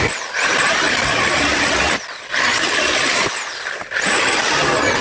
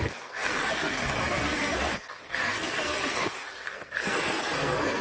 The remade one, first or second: second